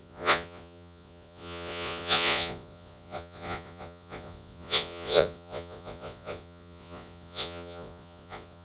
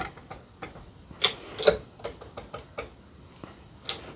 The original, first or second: second